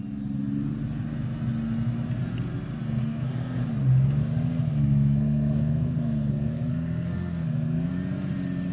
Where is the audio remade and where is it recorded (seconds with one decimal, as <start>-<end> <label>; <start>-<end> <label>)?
0.0-3.0 recorded; 3.0-3.6 remade; 3.6-4.6 recorded; 4.6-7.9 remade; 7.9-8.7 recorded

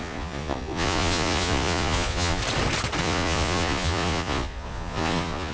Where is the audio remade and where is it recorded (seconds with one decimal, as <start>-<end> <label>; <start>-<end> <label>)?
0.0-2.4 remade; 2.4-3.0 recorded; 3.0-5.5 remade

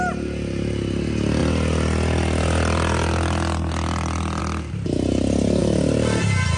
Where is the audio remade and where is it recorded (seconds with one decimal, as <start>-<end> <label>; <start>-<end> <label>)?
0.0-5.6 recorded; 5.6-6.6 remade